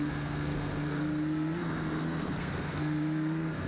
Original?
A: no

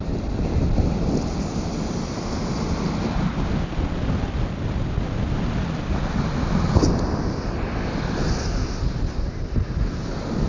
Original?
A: yes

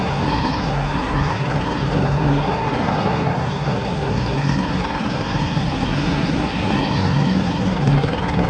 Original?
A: no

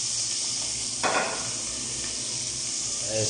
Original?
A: yes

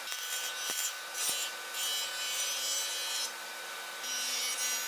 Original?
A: yes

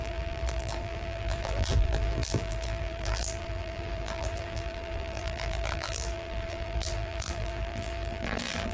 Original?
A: no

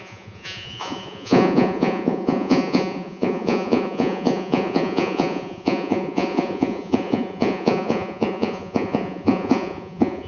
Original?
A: no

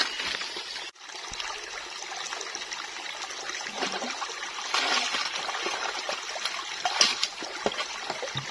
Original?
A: yes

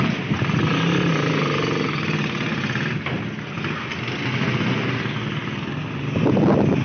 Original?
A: yes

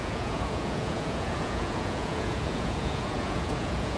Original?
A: no